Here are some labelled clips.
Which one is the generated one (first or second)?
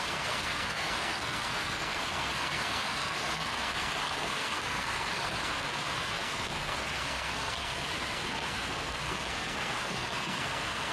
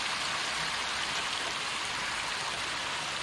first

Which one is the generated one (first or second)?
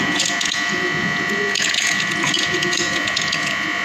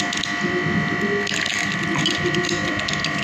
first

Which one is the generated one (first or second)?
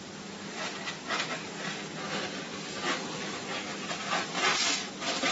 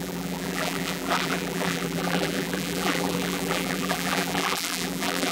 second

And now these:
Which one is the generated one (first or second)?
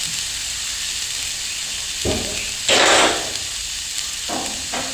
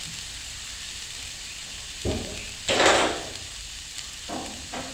second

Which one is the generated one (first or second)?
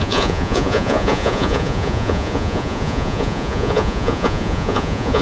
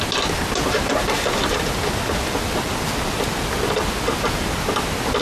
first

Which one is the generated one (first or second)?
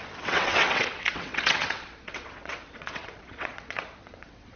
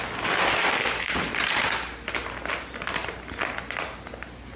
first